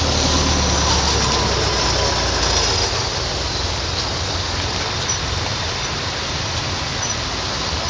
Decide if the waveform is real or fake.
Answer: real